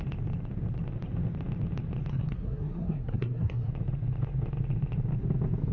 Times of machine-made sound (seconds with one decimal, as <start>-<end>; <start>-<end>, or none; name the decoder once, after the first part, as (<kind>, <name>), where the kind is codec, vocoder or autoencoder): 2.1-3.7 (codec, SNAC)